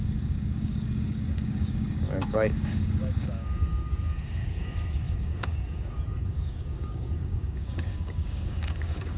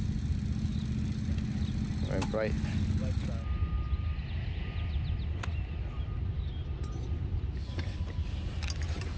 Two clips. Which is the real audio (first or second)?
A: second